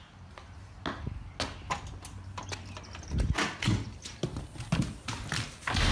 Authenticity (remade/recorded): recorded